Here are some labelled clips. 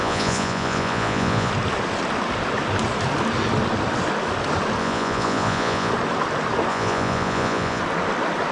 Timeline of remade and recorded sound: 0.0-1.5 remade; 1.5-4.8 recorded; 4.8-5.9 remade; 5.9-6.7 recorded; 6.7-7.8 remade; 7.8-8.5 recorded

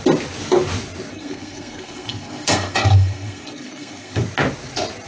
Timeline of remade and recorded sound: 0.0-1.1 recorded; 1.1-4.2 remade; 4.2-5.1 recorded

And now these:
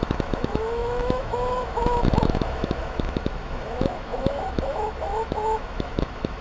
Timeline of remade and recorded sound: 0.0-6.4 remade

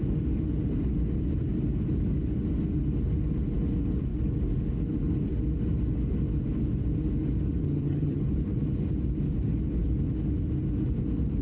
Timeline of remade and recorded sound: 0.0-7.6 recorded; 7.6-8.2 remade; 8.2-11.4 recorded

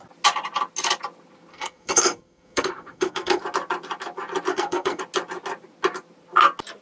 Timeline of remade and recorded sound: 0.0-1.5 recorded; 1.5-3.4 remade; 3.4-4.5 recorded; 4.5-5.0 remade; 5.0-6.8 recorded

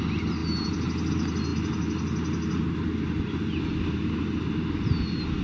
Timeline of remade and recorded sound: 0.0-5.4 recorded